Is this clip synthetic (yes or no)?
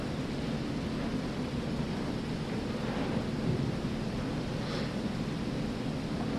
no